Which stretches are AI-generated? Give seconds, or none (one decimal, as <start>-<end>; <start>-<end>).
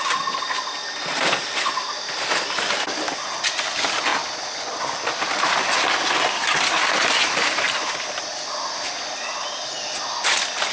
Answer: none